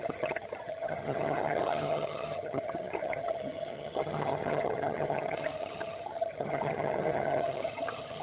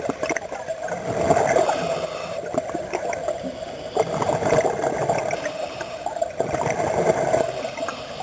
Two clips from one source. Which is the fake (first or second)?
first